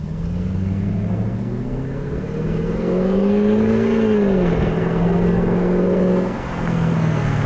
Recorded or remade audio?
remade